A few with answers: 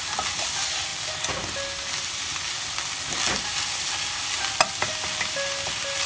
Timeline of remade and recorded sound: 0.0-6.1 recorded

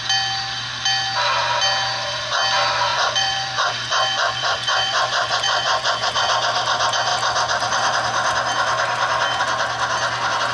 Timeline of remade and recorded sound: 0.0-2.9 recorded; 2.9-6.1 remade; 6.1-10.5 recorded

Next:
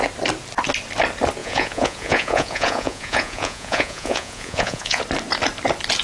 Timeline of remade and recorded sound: 0.0-1.4 recorded; 1.4-5.0 remade; 5.0-6.0 recorded

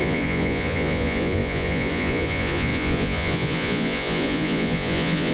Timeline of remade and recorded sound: 0.0-5.3 remade